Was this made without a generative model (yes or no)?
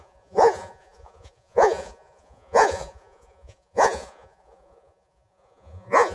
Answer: no